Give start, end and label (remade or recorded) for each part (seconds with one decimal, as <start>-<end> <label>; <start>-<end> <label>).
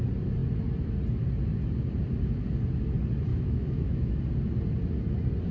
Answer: 0.0-3.3 recorded; 3.3-4.2 remade; 4.2-5.5 recorded